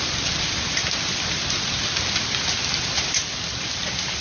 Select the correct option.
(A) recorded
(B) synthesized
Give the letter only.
A